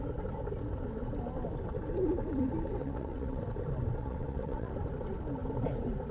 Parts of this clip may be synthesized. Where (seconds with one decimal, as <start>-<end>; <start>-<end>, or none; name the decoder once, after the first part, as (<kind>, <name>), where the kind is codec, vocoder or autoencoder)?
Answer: 2.8-3.4 (vocoder, WaveNeXt); 4.0-4.7